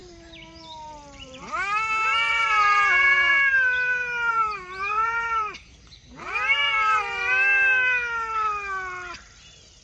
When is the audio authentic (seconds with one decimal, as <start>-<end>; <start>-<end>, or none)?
1.4-2.3; 3.3-4.3; 7.3-9.8